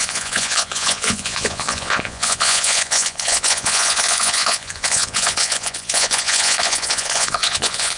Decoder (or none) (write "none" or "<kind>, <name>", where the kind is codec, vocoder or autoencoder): vocoder, Vocos